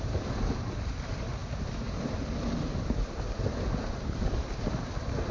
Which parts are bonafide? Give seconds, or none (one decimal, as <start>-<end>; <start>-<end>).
0.0-5.3